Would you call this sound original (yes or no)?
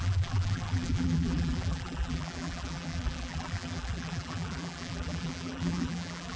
no